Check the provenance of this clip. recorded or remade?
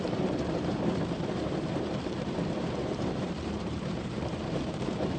remade